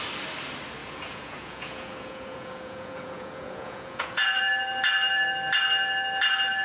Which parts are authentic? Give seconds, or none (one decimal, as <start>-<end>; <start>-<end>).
0.0-0.8; 4.4-6.6